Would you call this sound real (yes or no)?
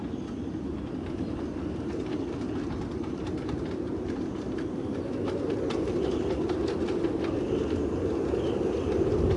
yes